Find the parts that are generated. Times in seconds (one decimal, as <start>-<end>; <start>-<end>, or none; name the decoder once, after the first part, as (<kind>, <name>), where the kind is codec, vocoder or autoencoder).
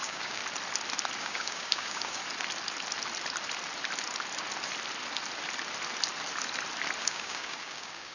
0.0-0.4 (codec, DAC); 1.2-2.2; 7.0-8.1